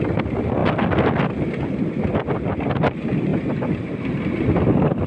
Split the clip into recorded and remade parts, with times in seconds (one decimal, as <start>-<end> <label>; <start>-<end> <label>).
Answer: 0.0-5.1 recorded